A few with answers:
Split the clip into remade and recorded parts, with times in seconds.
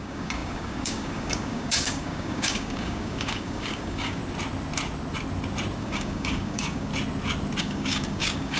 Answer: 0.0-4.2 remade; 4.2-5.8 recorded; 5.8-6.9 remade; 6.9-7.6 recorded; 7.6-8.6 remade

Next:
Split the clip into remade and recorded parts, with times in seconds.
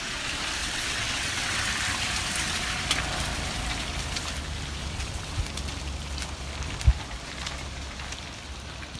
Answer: 0.0-0.6 recorded; 0.6-1.6 remade; 1.6-4.8 recorded; 4.8-5.4 remade; 5.4-9.0 recorded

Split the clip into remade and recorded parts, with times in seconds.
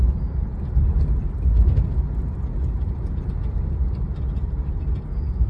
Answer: 0.0-5.5 recorded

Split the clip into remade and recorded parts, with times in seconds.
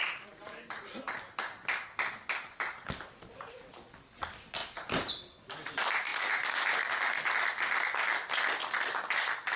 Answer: 0.0-9.6 recorded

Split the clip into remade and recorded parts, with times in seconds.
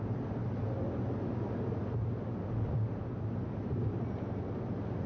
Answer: 0.0-0.4 remade; 0.4-3.5 recorded; 3.5-5.1 remade